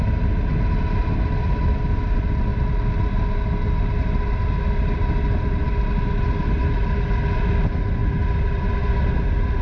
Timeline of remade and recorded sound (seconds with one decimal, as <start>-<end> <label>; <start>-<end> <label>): 0.0-9.6 recorded